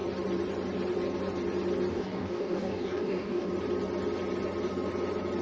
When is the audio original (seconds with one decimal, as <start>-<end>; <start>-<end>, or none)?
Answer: 0.0-1.9; 3.5-5.4